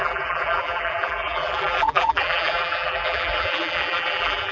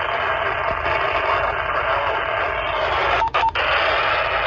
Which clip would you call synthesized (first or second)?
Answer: first